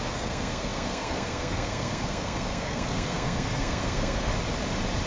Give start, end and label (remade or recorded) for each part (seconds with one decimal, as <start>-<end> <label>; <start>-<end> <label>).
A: 0.0-4.3 remade; 4.3-5.1 recorded